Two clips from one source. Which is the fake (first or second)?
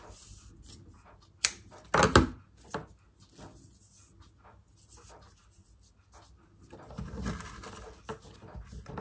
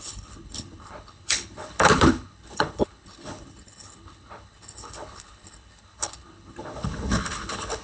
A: second